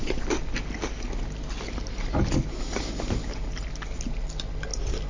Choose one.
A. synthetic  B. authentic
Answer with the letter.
B